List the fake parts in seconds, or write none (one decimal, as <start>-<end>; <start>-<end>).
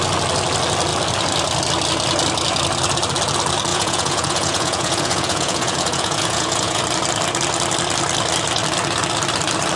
3.7-6.8